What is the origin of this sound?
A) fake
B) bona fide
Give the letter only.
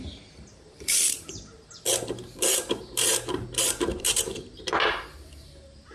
A